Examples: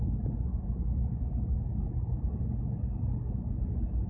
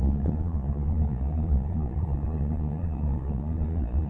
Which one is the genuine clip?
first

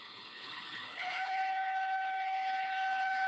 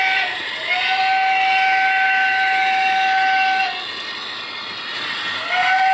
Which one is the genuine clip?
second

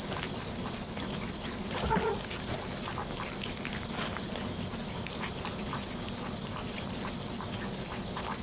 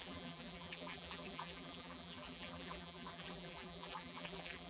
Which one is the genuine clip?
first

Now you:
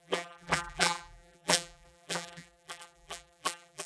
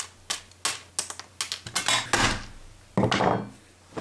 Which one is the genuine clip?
second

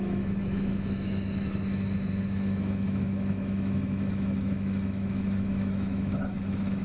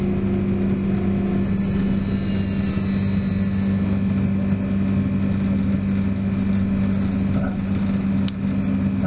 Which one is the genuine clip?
second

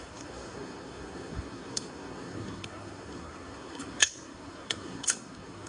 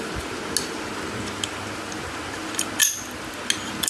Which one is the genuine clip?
second